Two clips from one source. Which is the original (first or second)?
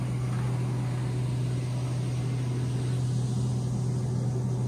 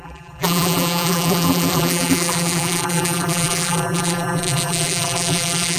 first